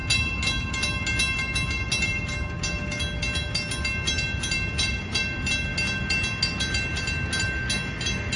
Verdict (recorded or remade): recorded